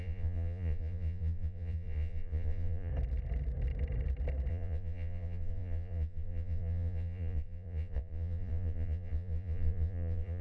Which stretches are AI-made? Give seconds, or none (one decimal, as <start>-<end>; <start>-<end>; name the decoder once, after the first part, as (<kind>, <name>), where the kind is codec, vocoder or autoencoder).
0.0-2.9 (vocoder, Vocos); 4.5-10.4